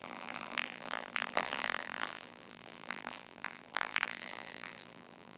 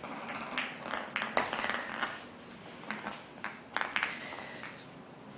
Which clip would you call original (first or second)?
second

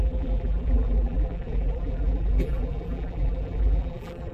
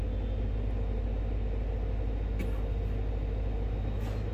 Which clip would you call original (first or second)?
second